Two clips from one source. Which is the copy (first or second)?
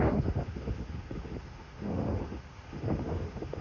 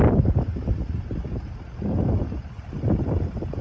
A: first